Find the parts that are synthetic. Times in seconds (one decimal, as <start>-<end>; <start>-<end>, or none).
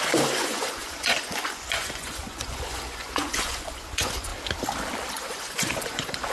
0.0-4.3; 5.1-6.3